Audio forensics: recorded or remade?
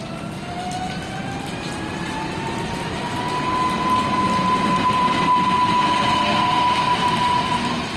recorded